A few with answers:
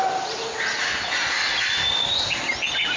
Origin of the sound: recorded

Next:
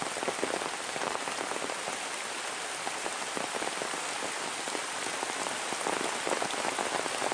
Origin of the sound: recorded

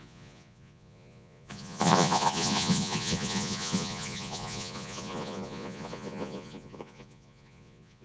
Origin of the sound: remade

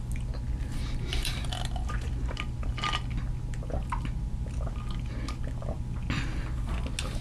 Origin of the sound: recorded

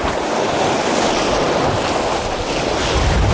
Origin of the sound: recorded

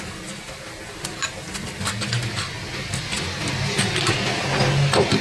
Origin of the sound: recorded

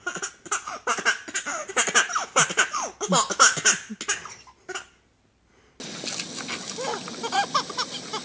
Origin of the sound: recorded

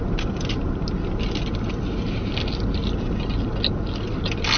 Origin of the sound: recorded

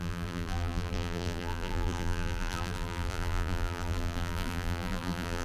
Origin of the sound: remade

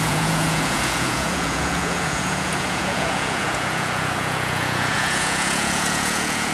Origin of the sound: remade